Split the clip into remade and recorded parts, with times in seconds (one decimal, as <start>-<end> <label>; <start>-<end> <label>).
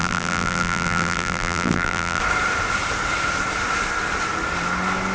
0.0-2.2 remade; 2.2-5.1 recorded